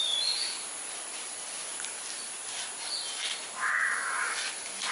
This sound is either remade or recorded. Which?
recorded